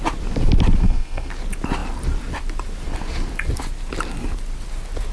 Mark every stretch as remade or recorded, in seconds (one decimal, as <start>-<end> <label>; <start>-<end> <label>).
0.0-0.8 recorded; 0.8-1.3 remade; 1.3-5.1 recorded